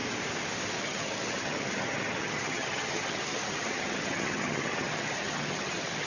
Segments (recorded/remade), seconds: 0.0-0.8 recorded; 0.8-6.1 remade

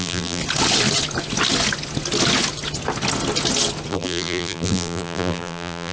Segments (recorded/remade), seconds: 0.0-0.4 remade; 0.4-3.9 recorded; 3.9-5.9 remade

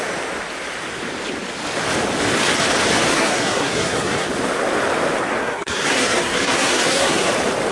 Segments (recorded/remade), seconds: 0.0-3.1 recorded; 3.1-4.3 remade; 4.3-5.4 recorded; 5.4-7.3 remade; 7.3-7.7 recorded

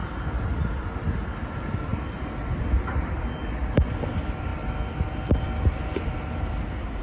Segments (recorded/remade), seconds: 0.0-7.0 recorded